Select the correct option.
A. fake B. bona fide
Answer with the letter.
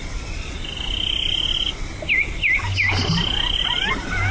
B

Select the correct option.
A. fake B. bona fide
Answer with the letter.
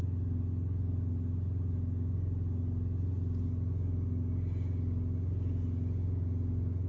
B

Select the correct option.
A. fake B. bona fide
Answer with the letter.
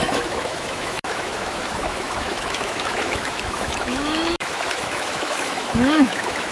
A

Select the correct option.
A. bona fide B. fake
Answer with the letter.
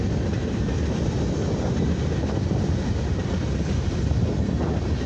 A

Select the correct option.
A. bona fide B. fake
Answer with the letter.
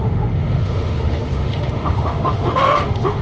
B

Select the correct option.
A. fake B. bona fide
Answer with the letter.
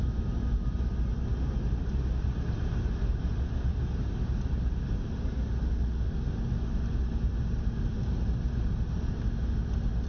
B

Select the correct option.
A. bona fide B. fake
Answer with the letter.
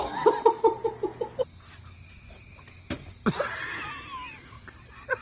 A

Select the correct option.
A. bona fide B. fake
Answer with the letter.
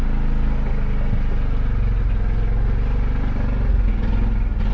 A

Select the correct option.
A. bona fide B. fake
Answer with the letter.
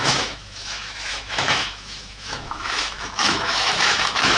B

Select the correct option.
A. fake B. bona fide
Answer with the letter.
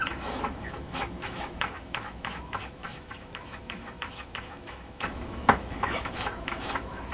A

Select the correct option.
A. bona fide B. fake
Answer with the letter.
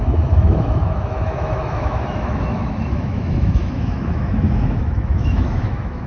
B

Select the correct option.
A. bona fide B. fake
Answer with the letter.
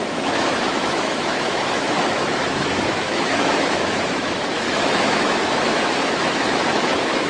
B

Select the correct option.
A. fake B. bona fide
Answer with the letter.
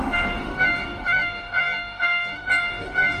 A